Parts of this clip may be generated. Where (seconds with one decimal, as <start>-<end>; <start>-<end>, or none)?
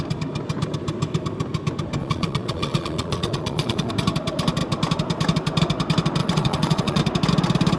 2.0-3.9; 6.2-7.0